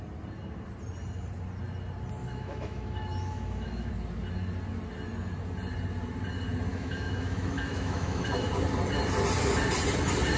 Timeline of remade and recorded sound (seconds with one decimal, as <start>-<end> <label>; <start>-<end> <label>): 0.0-2.2 recorded; 2.2-3.9 remade; 3.9-6.7 recorded; 6.7-8.5 remade; 8.5-10.4 recorded